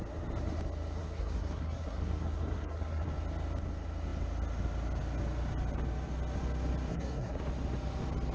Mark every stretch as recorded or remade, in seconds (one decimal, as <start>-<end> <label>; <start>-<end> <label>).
0.0-1.0 recorded; 1.0-3.1 remade; 3.1-6.9 recorded; 6.9-7.4 remade; 7.4-8.3 recorded